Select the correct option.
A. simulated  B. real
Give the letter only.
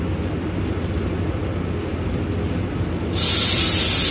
B